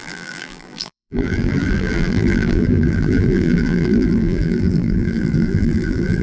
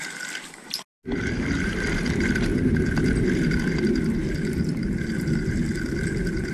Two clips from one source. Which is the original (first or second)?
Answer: second